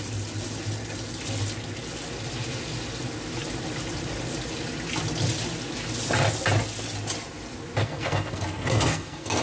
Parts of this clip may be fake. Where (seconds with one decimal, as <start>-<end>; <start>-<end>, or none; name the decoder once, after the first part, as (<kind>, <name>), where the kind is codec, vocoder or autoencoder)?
7.8-9.4 (codec, SNAC)